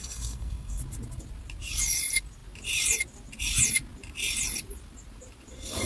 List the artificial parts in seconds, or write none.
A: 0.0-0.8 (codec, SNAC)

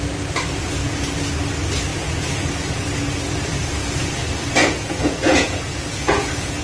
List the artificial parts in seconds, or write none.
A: 1.9-2.5 (vocoder, Vocos); 4.6-6.6

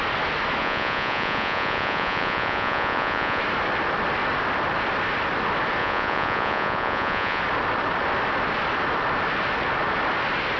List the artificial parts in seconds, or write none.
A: 0.6-3.4 (vocoder, Vocos); 5.8-7.4